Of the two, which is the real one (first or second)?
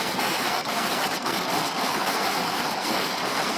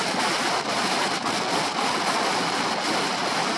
second